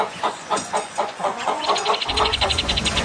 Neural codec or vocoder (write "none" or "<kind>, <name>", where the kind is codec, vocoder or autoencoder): vocoder, Vocos